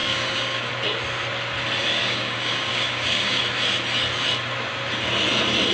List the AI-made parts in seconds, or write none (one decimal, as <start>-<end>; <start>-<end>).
0.0-0.7; 2.0-3.4